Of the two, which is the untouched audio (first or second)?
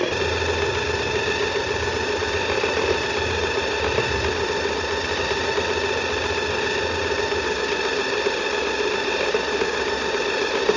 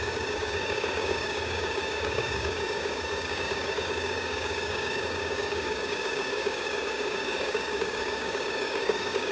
first